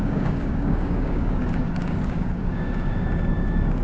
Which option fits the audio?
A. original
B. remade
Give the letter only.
B